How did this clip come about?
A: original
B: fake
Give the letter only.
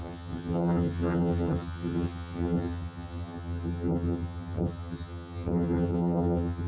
B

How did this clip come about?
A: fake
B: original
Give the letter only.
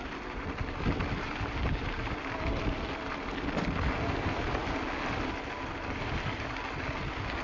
B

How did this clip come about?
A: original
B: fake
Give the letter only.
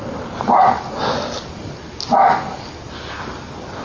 A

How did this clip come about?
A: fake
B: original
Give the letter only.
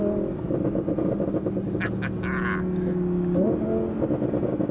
B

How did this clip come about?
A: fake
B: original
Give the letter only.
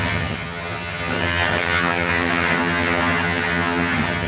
A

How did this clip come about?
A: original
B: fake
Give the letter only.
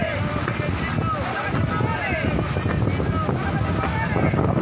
A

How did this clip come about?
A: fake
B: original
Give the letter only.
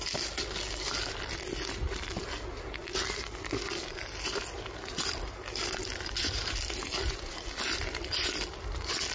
B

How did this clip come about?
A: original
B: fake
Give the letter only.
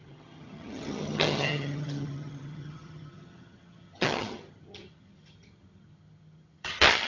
B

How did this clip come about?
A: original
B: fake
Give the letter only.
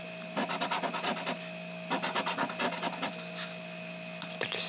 A